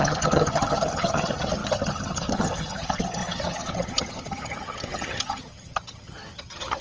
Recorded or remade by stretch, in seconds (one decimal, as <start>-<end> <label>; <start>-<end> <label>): 0.0-6.8 remade